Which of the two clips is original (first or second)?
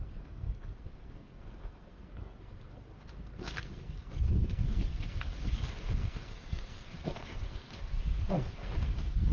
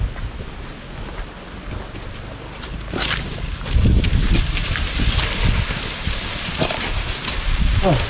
second